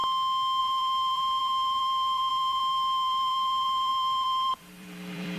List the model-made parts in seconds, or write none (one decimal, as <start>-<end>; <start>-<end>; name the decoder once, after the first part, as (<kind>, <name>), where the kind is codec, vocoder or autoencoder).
0.6-5.4 (vocoder, BigVGAN v2)